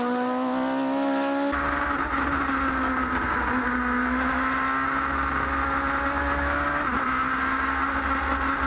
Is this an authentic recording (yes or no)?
yes